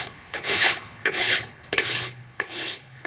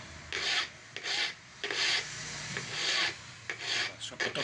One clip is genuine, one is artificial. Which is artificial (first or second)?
first